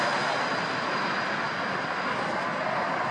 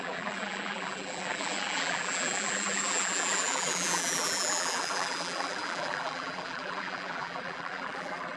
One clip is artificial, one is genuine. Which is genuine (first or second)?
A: first